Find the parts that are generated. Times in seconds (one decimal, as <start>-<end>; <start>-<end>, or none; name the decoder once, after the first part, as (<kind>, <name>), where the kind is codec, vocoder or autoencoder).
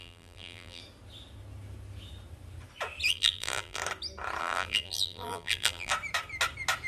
0.0-0.8 (vocoder, BigVGAN v2); 3.1-3.8; 4.4-5.9